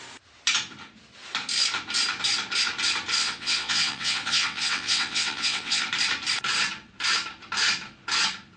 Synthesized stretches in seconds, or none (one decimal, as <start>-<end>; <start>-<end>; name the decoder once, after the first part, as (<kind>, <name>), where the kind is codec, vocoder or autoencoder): 3.2-5.8 (vocoder, WaveNeXt)